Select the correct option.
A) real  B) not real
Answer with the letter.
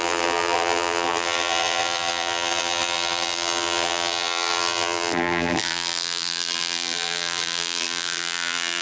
B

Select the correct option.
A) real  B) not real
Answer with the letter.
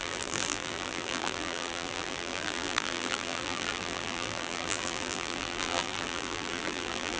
B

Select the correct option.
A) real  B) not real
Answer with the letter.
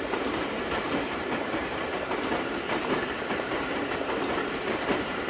B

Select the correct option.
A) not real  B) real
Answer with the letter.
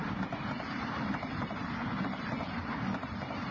A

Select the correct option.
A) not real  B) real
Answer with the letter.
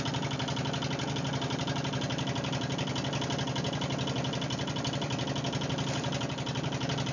B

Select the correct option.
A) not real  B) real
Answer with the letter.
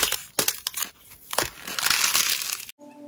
B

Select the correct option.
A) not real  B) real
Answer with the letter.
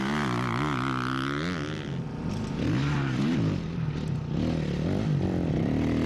B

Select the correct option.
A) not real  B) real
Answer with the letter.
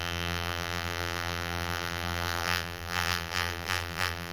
A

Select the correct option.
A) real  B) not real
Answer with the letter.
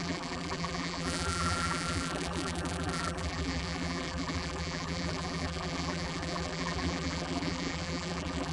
B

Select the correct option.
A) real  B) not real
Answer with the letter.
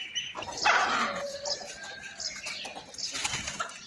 A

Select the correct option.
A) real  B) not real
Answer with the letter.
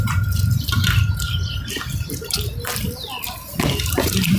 B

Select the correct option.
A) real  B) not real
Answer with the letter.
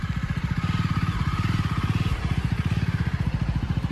B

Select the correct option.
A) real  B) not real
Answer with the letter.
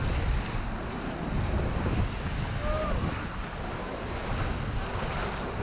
A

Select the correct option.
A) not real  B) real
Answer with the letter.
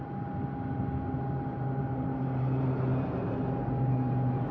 B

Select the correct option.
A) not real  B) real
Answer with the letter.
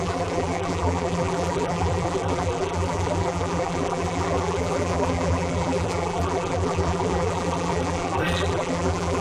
A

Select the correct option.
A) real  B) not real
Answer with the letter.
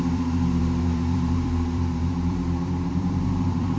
B